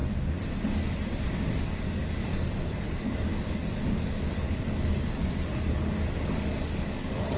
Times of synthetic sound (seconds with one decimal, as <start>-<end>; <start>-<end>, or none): 1.8-7.4